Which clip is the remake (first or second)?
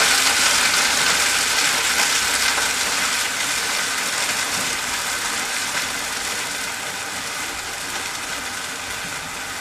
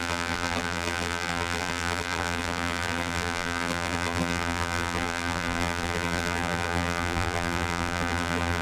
second